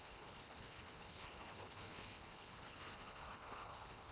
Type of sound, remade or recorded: remade